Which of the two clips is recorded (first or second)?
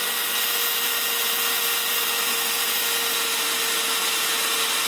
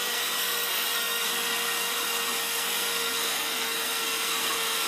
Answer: first